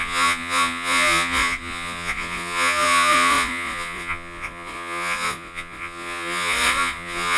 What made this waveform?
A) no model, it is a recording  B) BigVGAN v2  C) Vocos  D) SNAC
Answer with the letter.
C